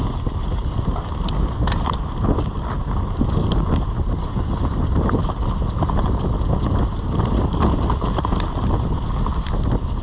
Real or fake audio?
real